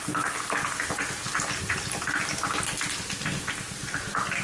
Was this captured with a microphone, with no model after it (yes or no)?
yes